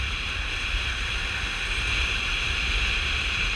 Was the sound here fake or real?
fake